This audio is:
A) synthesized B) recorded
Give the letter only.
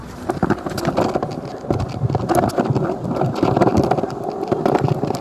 B